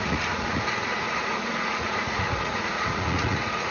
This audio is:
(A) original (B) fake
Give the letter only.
B